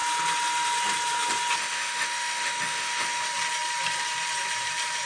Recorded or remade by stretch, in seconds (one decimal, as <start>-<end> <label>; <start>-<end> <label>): 0.0-1.6 recorded; 1.6-3.2 remade; 3.2-5.1 recorded